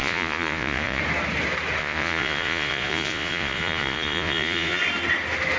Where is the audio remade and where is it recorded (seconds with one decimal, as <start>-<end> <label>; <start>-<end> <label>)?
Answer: 0.0-1.0 remade; 1.0-1.8 recorded; 1.8-4.8 remade; 4.8-5.6 recorded